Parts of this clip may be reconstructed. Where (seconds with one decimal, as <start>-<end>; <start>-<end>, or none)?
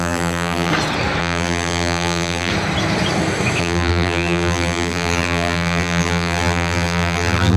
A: 0.0-0.7; 1.2-2.5; 3.6-7.6